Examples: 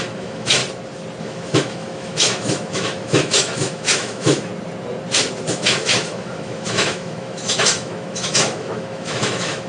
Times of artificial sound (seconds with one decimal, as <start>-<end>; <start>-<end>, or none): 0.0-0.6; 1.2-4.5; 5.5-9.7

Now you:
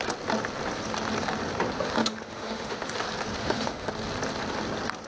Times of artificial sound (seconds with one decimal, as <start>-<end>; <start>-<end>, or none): 2.0-2.8; 3.4-3.9

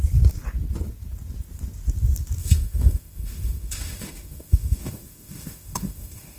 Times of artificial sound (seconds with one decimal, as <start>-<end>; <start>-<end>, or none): 2.4-6.4